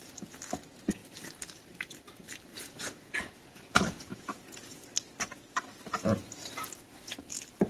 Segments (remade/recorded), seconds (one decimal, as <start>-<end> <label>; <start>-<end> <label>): 0.0-2.5 recorded; 2.5-4.8 remade; 4.8-7.7 recorded